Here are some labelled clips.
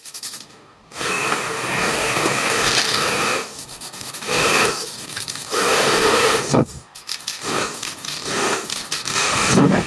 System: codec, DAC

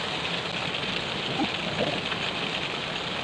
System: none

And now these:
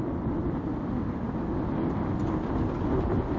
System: none